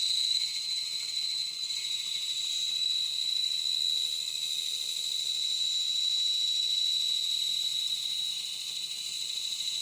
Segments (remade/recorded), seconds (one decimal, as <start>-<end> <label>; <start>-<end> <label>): 0.0-9.8 recorded